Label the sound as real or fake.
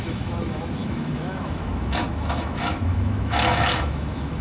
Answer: fake